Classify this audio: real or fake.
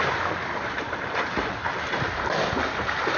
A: real